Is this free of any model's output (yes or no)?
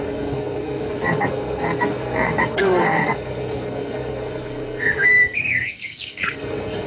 no